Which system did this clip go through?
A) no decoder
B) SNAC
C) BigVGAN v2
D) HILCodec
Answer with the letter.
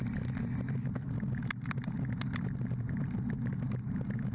A